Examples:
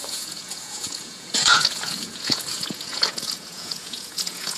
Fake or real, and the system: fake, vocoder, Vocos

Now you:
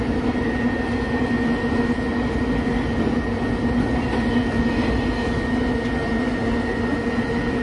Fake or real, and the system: real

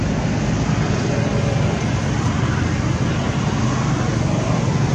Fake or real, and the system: real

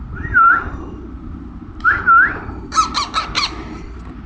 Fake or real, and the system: fake, vocoder, BigVGAN v2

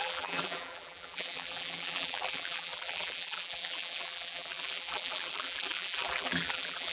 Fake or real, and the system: fake, vocoder, BigVGAN v2